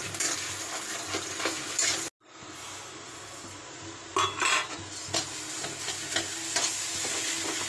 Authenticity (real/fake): real